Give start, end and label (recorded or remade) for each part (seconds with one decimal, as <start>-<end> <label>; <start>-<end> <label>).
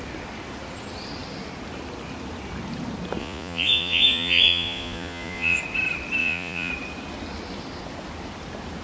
0.0-3.2 recorded; 3.2-5.6 remade; 5.6-6.2 recorded; 6.2-6.7 remade; 6.7-8.8 recorded